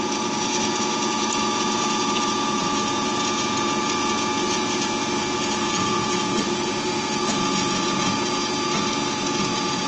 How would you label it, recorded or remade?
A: remade